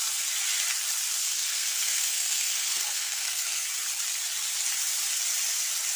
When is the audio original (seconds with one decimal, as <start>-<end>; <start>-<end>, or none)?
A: 0.0-1.2; 3.7-6.0